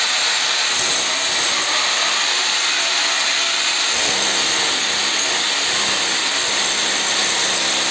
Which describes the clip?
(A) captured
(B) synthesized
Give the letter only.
A